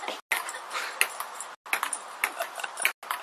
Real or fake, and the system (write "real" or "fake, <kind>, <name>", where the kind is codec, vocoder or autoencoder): real